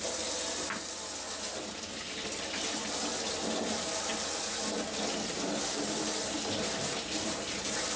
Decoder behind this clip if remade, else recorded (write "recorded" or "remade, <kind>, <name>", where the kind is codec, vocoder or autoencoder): recorded